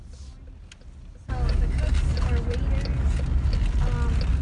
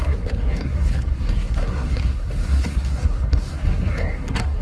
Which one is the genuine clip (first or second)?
first